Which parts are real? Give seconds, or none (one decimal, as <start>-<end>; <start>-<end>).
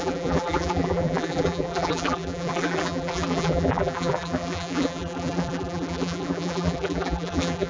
none